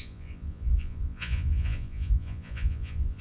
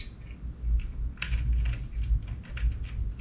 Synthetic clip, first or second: first